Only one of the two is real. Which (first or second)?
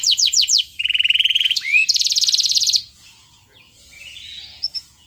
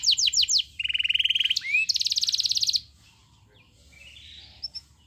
second